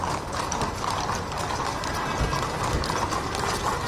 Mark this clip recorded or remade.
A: recorded